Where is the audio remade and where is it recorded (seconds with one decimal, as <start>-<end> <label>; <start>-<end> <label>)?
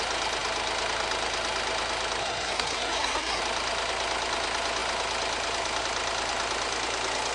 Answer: 0.0-2.2 recorded; 2.2-3.4 remade; 3.4-7.3 recorded